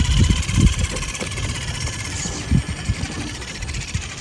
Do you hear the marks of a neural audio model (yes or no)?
no